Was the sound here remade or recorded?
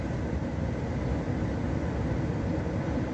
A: recorded